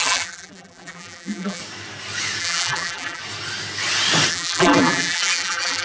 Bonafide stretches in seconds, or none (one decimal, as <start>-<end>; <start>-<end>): 1.6-2.4; 3.2-4.3